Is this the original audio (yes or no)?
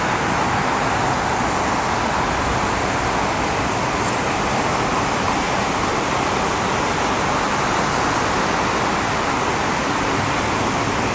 yes